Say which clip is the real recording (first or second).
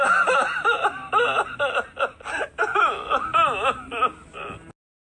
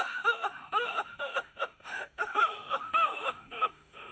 first